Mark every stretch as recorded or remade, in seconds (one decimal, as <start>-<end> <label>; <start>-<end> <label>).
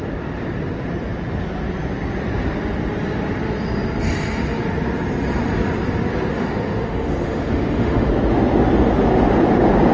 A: 0.0-6.3 recorded; 6.3-8.1 remade; 8.1-9.9 recorded